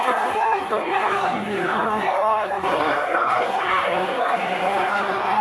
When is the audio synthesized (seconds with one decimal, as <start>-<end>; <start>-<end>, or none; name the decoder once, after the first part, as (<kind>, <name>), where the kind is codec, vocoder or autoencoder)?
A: 0.0-5.4 (codec, SNAC)

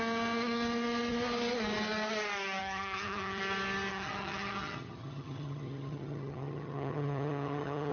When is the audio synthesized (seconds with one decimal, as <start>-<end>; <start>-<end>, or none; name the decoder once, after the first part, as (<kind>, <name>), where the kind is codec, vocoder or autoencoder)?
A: 2.6-3.4 (vocoder, HiFi-GAN); 3.9-7.9

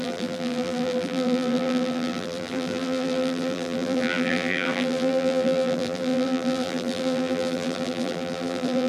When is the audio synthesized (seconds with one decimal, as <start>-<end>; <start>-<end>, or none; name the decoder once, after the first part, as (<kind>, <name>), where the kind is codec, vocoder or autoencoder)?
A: 0.0-8.9 (vocoder, BigVGAN v2)